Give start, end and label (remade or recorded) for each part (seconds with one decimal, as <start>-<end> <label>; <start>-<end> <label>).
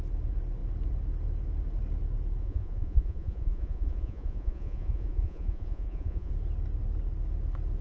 0.0-2.4 recorded; 2.4-6.3 remade; 6.3-7.8 recorded